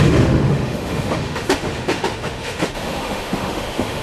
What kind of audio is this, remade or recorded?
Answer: remade